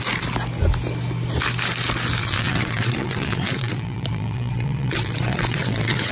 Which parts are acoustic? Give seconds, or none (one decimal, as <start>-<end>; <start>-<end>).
0.0-2.2

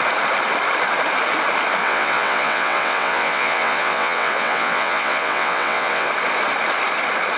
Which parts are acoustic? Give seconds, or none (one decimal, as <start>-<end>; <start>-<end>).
0.0-1.8; 6.1-7.4

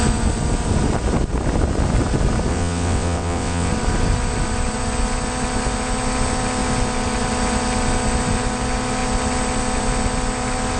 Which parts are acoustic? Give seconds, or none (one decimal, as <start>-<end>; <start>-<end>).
0.0-2.5; 3.7-10.8

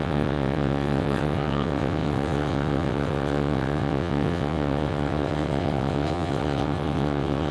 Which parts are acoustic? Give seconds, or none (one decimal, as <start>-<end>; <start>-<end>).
none

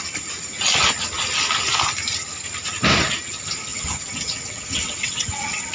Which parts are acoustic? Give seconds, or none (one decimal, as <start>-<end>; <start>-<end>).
0.0-3.7